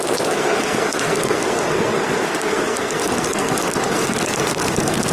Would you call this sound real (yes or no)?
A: no